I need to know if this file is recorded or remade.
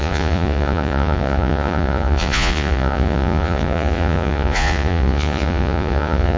remade